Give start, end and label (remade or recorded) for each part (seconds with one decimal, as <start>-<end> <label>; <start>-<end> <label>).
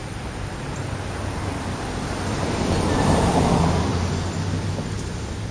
0.0-3.3 remade; 3.3-3.9 recorded; 3.9-4.7 remade; 4.7-5.5 recorded